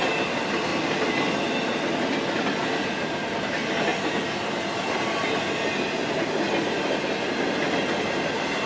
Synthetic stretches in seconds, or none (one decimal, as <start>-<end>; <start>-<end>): none